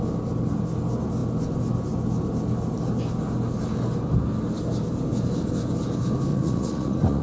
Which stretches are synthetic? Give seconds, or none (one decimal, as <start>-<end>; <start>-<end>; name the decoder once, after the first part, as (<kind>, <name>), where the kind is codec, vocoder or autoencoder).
6.3-7.2 (vocoder, Vocos)